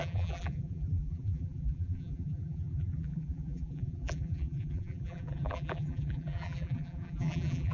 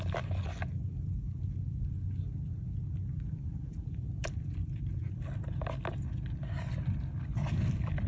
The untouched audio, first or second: second